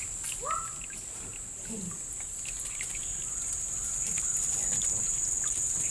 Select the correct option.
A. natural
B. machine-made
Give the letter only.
A